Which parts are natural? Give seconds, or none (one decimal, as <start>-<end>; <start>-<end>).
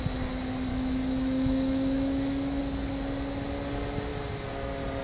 0.0-0.7; 2.6-5.0